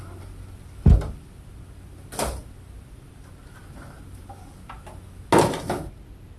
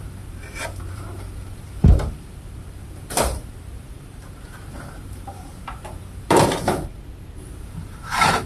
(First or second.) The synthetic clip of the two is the second